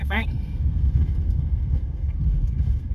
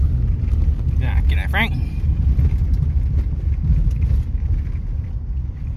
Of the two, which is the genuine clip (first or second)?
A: second